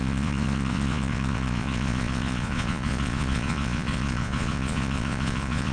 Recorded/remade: remade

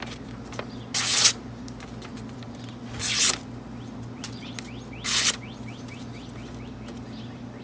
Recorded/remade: recorded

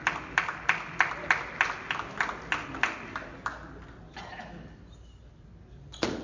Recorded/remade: recorded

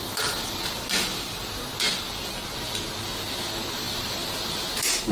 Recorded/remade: recorded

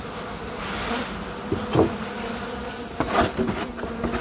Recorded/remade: recorded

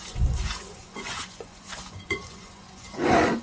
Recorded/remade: remade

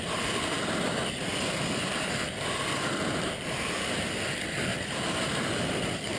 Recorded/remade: recorded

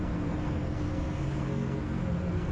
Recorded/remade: remade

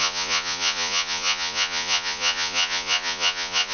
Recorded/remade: remade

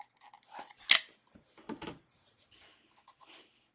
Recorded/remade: recorded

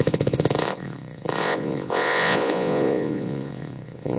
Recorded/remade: remade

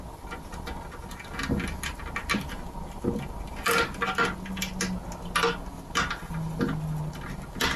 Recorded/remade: recorded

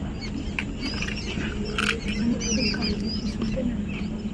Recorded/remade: recorded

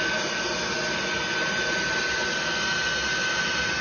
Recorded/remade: recorded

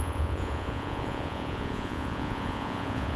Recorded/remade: remade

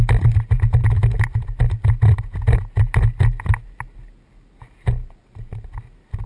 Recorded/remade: recorded